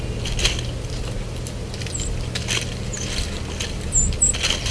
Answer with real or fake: real